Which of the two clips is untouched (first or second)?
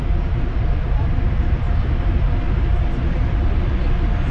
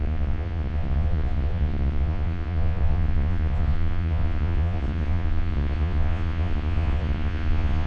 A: first